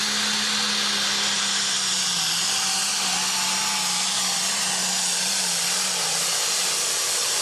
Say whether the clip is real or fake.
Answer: real